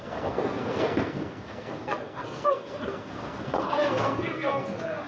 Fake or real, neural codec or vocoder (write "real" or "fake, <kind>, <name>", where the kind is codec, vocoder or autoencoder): fake, codec, SNAC